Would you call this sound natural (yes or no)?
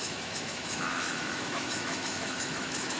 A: no